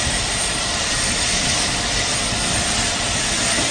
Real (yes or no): yes